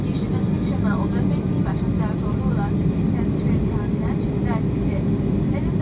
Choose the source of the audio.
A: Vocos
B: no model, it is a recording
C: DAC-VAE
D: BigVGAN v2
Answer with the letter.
B